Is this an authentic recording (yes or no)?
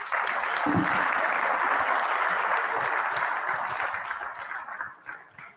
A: yes